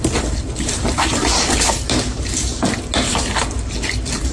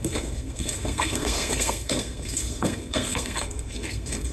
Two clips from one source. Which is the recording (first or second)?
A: first